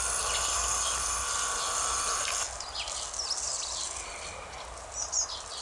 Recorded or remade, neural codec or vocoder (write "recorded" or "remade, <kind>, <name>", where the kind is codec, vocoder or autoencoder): recorded